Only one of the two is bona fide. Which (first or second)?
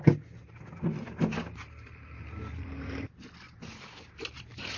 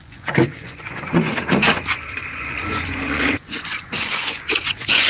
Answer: first